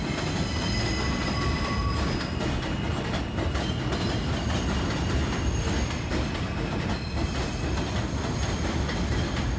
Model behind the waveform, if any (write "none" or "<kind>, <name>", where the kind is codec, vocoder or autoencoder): none